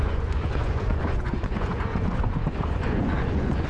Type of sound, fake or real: fake